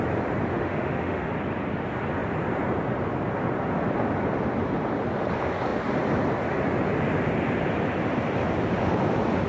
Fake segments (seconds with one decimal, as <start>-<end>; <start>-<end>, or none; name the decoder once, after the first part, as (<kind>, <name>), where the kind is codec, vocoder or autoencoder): 0.5-1.3 (autoencoder, DAC-VAE)